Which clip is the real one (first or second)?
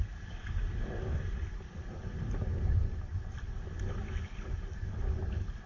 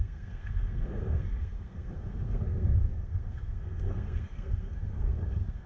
first